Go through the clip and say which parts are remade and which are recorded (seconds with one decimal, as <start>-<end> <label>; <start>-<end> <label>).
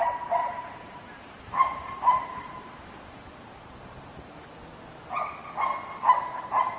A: 0.0-0.4 recorded; 0.4-4.5 remade; 4.5-6.8 recorded